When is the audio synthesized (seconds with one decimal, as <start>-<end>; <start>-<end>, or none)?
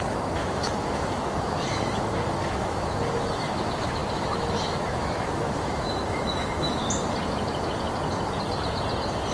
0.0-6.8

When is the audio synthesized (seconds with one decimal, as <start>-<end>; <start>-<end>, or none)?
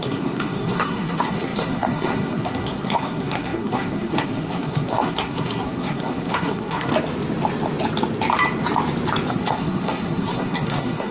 0.0-6.9; 9.3-11.1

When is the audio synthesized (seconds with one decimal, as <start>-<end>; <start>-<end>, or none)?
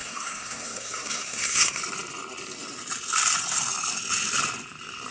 0.0-1.8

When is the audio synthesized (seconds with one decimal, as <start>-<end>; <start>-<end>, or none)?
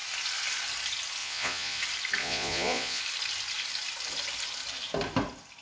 1.2-1.8; 2.2-3.0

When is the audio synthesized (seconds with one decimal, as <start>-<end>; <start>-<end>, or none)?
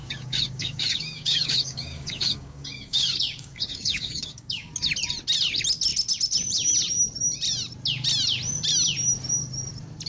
0.0-4.7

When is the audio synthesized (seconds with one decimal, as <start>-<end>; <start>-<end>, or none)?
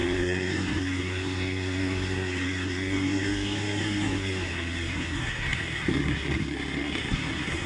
0.0-7.7